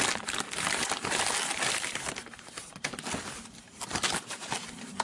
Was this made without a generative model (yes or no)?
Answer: yes